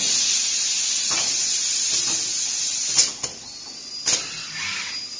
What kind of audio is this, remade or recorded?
recorded